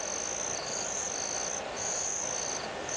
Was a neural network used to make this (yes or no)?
no